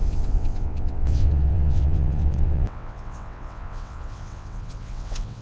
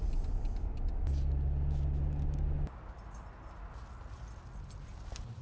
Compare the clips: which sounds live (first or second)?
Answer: second